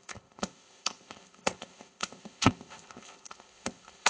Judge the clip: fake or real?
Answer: fake